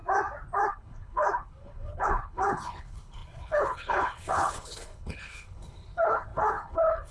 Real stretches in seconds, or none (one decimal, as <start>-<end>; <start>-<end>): 0.0-0.7